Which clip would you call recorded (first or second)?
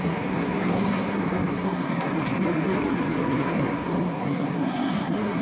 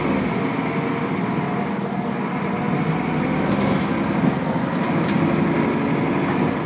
second